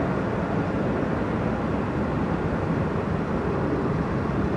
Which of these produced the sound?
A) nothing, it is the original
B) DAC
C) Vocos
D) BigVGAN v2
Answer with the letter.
A